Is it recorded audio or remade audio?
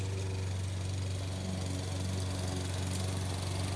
recorded